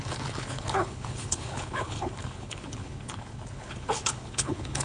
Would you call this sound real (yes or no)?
no